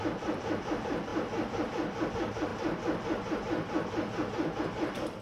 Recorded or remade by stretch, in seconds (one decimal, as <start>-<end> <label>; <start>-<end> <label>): 0.0-1.1 remade; 1.1-2.1 recorded; 2.1-2.5 remade; 2.5-4.6 recorded; 4.6-5.2 remade